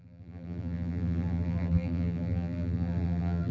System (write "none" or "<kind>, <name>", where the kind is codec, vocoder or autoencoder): vocoder, BigVGAN v2